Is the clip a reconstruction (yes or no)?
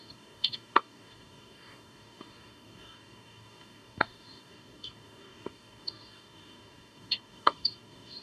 yes